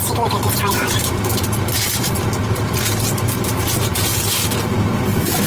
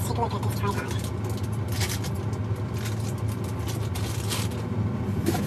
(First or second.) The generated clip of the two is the first